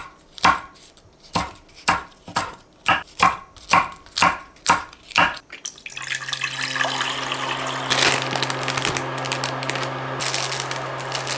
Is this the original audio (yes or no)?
yes